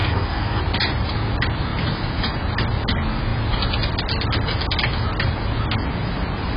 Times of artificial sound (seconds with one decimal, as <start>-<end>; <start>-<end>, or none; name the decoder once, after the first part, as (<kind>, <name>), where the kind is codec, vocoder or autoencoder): 0.0-0.6 (codec, DAC)